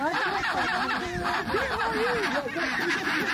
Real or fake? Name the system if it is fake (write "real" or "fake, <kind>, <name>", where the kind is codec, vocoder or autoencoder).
real